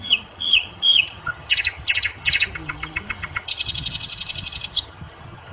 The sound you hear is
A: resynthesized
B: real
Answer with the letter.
A